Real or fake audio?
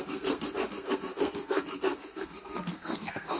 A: fake